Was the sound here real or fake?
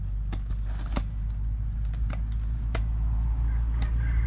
real